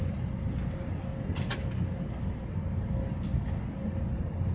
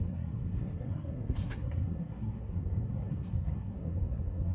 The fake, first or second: second